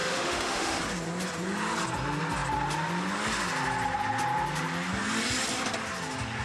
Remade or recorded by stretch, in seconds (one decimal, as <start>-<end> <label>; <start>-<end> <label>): 0.0-0.8 remade; 0.8-6.4 recorded